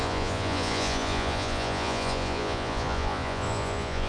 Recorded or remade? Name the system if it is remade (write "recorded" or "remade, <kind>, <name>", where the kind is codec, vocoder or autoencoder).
remade, vocoder, Vocos